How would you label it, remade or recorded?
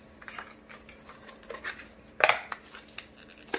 recorded